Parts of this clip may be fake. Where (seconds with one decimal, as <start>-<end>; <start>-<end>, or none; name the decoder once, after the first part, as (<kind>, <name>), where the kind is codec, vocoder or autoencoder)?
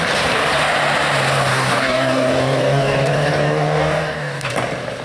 1.5-4.5 (codec, DAC)